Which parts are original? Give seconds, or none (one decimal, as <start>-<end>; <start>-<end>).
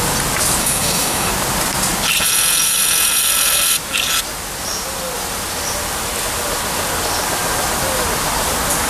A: 0.0-0.6; 1.3-8.9